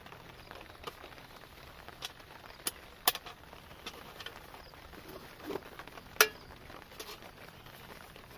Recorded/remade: recorded